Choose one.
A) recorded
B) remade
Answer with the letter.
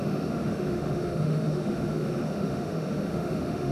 B